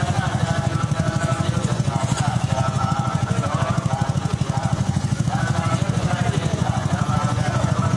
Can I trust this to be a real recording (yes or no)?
no